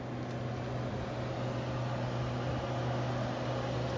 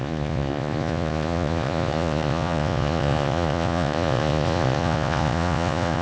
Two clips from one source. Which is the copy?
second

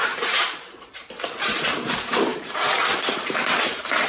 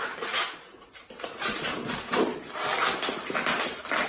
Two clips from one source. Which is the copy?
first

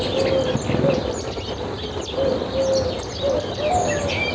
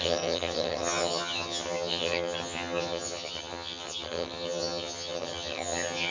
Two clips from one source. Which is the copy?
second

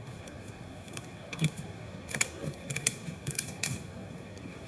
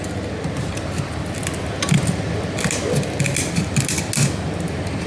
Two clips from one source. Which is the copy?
first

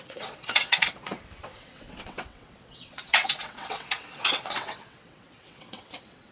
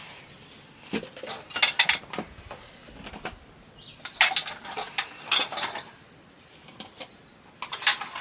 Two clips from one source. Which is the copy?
first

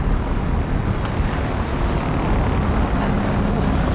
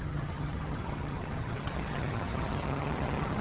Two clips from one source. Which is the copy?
second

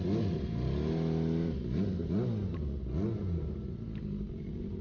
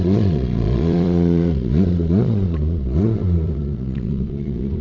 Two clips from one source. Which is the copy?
second